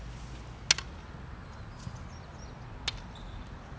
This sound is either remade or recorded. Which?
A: recorded